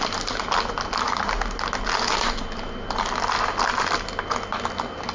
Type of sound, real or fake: real